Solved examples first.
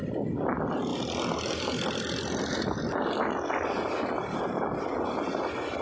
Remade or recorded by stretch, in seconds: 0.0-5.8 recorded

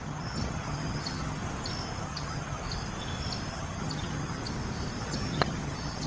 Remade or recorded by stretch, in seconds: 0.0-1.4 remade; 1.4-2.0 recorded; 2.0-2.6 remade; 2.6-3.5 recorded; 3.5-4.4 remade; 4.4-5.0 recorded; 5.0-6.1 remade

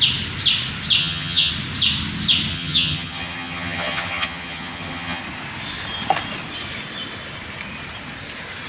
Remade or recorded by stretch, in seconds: 0.0-1.0 recorded; 1.0-1.5 remade; 1.5-2.5 recorded; 2.5-5.2 remade; 5.2-8.7 recorded

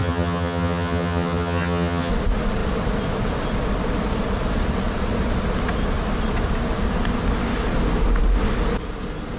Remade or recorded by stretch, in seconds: 0.0-2.1 remade; 2.1-9.4 recorded

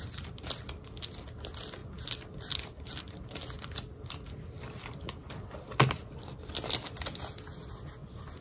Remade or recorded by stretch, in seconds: 0.0-8.4 recorded

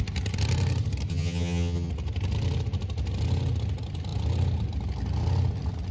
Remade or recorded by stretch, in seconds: 0.0-1.1 recorded; 1.1-1.9 remade; 1.9-5.9 recorded